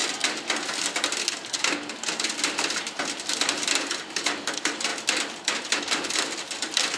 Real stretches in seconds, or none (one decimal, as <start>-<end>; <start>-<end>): 0.0-3.5; 4.9-5.8